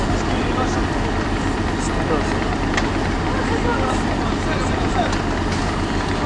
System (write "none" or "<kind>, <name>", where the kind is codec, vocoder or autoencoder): none